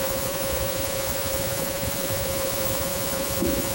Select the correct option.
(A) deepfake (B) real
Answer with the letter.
A